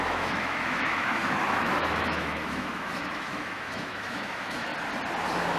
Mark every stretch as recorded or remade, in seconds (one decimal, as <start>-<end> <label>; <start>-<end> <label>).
0.0-4.7 remade; 4.7-5.6 recorded